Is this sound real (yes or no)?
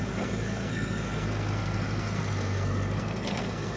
no